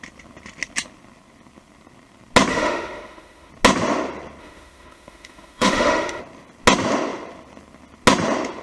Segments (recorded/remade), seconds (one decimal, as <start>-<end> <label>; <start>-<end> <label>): 0.0-2.5 recorded; 2.5-3.5 remade; 3.5-4.4 recorded; 4.4-6.2 remade; 6.2-8.6 recorded